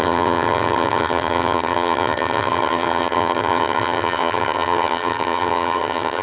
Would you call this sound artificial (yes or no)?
yes